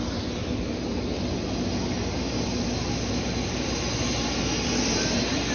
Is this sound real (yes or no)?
yes